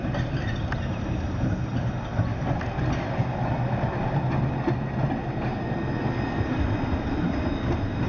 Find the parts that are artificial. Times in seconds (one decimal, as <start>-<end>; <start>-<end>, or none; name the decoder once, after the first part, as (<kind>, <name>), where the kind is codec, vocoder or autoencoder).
none